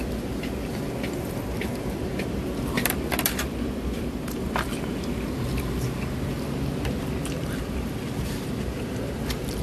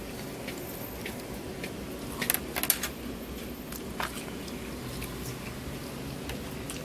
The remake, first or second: first